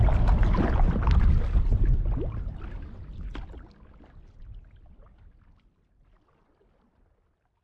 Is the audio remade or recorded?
recorded